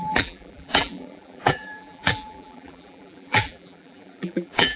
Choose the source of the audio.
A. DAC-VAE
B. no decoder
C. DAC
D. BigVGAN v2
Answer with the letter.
D